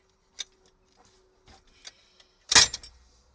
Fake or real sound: real